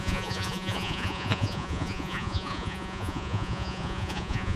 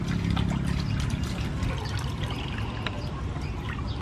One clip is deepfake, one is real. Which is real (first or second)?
second